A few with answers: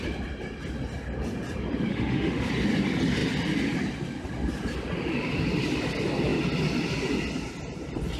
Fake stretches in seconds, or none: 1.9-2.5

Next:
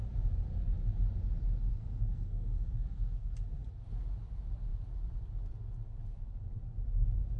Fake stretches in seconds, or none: 1.7-3.3

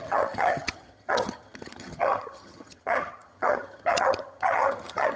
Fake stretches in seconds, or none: 0.0-5.2

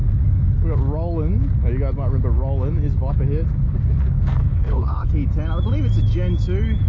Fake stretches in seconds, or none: 4.4-5.1

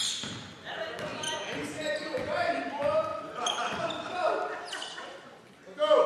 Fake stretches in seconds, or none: 1.1-2.7; 3.1-3.8